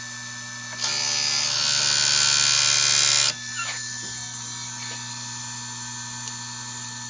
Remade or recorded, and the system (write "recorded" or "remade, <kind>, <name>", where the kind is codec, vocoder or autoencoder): recorded